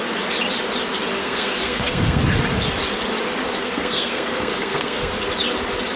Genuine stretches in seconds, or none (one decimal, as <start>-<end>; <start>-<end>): 0.0-1.2; 2.2-3.6; 5.1-6.0